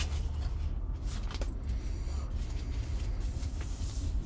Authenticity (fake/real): real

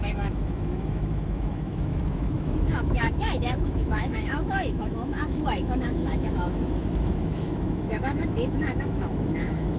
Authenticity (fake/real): fake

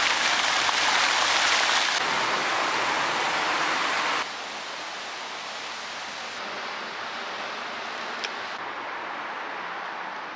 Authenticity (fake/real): real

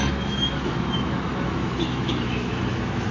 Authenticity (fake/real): fake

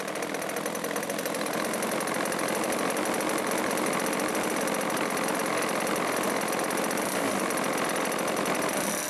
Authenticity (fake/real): real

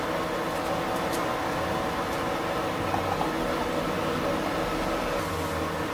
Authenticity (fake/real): real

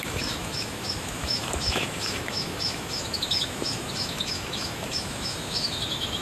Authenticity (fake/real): fake